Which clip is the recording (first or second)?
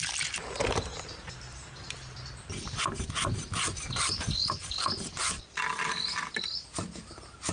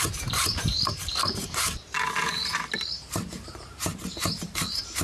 first